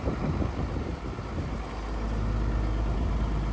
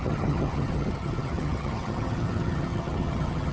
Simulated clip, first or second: second